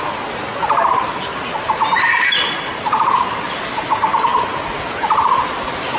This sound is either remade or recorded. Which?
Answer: recorded